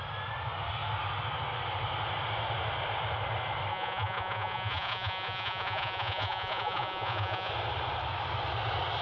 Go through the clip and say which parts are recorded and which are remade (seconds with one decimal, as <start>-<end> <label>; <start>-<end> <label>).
0.0-3.7 recorded; 3.7-7.5 remade; 7.5-9.0 recorded